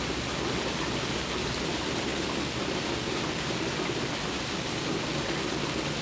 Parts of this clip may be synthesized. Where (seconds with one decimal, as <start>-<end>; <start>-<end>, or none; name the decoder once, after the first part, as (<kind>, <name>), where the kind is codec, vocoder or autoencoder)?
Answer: none